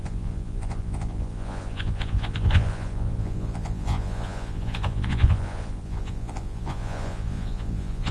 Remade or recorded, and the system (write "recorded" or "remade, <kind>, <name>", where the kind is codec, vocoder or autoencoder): remade, vocoder, Vocos